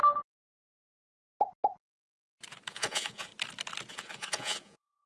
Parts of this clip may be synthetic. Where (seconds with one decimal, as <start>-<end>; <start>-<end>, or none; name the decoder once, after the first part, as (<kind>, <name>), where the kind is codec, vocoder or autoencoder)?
2.7-3.3 (vocoder, Vocos); 3.9-5.1